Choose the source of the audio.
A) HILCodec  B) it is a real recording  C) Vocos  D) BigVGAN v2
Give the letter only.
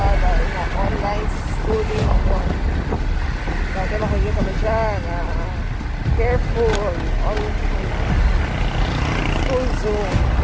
B